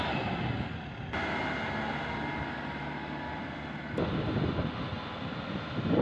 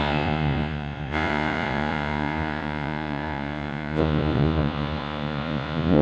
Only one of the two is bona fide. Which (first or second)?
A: first